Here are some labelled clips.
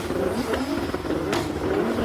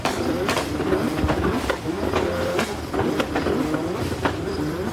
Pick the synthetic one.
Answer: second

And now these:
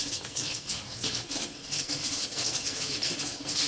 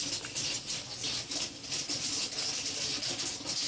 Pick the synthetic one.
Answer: first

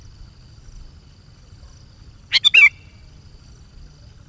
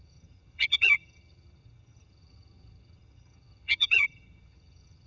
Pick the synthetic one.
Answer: second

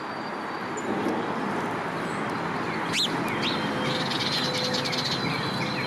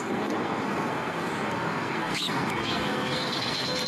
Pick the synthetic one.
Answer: second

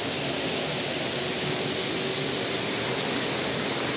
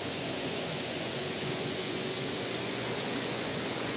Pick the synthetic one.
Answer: second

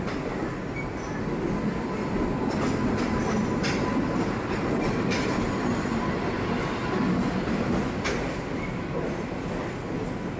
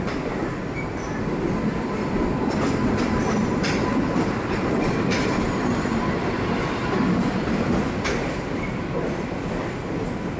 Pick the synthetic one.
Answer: second